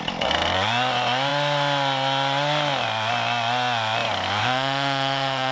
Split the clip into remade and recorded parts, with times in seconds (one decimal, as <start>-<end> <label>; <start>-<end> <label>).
0.0-4.4 recorded; 4.4-5.5 remade